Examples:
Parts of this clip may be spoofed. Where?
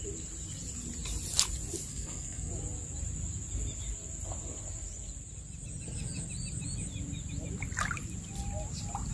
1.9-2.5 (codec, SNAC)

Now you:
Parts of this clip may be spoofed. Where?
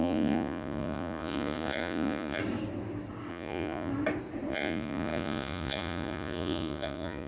0.0-2.4 (vocoder, Vocos); 3.3-3.9; 4.5-7.3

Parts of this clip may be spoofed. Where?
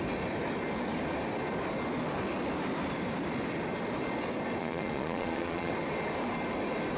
4.6-5.7 (vocoder, Vocos)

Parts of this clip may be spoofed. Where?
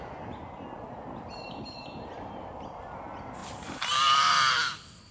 3.4-4.5 (vocoder, BigVGAN v2)